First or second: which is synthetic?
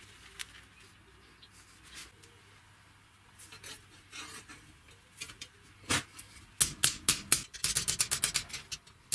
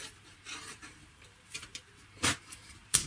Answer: second